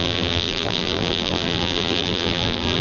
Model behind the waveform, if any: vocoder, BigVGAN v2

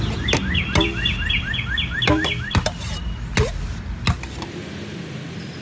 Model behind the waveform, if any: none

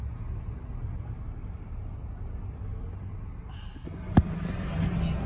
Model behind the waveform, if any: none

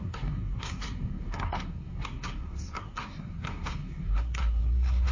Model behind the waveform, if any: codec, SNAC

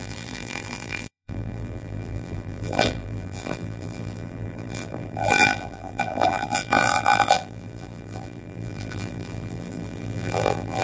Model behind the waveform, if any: vocoder, BigVGAN v2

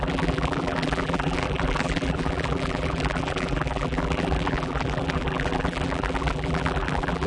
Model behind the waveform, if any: vocoder, BigVGAN v2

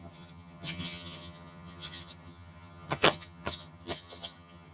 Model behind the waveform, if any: vocoder, HiFi-GAN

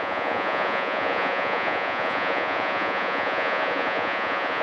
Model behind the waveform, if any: vocoder, Vocos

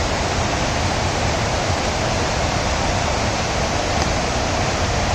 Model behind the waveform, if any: none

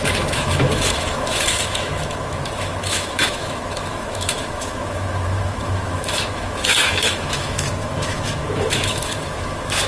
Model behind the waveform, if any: autoencoder, DAC-VAE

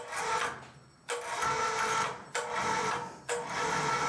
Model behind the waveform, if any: none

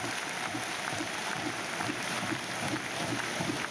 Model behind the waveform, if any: vocoder, BigVGAN v2